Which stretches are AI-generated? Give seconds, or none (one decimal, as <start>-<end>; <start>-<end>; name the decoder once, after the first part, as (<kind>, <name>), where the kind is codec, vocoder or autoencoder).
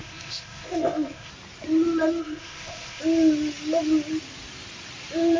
0.0-1.3 (codec, ZipCodec); 2.2-3.0